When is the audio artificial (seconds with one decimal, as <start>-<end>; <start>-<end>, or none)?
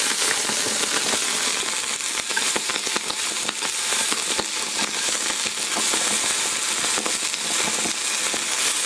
2.3-5.3